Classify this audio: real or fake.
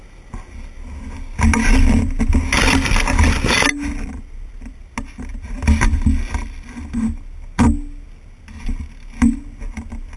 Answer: real